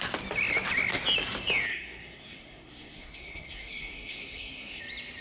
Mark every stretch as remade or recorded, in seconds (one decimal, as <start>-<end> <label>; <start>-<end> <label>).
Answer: 0.0-1.7 recorded; 1.7-4.8 remade; 4.8-5.2 recorded